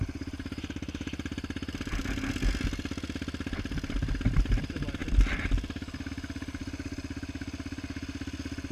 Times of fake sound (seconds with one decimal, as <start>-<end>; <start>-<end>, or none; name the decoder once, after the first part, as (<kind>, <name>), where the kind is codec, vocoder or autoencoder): none